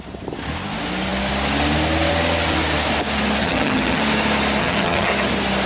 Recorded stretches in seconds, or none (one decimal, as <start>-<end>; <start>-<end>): 0.0-3.4; 4.0-4.6; 5.1-5.7